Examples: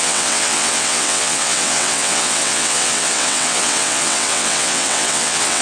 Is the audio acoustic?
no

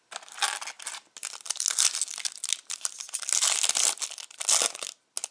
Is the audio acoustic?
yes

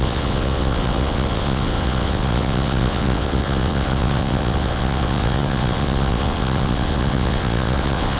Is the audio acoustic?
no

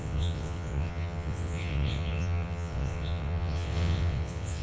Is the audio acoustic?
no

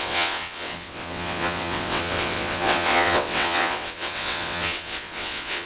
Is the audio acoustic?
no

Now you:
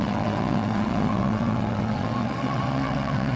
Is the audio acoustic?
no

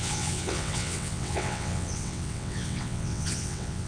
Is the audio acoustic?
no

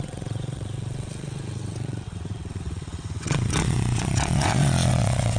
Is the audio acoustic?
no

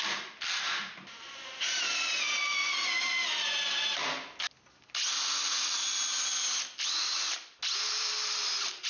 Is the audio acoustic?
yes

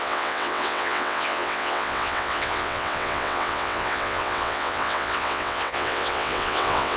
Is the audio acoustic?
no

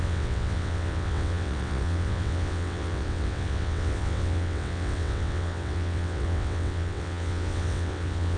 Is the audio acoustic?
no